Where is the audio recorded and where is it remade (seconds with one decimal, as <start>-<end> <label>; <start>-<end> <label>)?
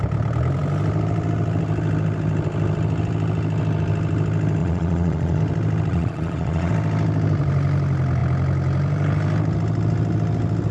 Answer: 0.0-4.6 recorded; 4.6-5.4 remade; 5.4-5.9 recorded; 5.9-6.7 remade; 6.7-10.7 recorded